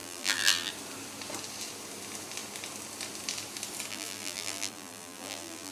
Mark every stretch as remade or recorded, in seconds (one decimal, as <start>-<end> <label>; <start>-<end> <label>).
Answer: 0.0-0.7 remade; 0.7-3.9 recorded; 3.9-5.7 remade